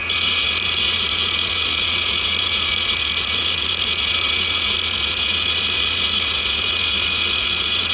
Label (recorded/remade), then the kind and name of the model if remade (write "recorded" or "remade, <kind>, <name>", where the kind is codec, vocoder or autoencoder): remade, vocoder, Vocos